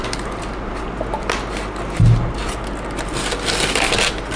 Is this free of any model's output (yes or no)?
yes